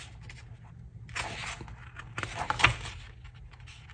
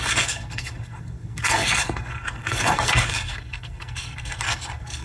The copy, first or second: second